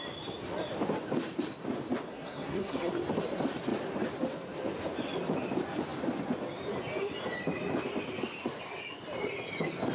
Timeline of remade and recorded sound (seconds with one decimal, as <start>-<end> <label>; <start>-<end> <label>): 0.0-2.1 recorded; 2.1-2.9 remade; 2.9-9.9 recorded